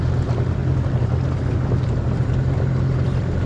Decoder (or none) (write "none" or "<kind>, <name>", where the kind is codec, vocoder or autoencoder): none